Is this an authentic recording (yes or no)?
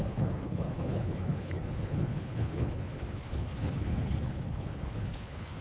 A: no